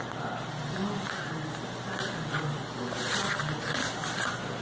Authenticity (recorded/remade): recorded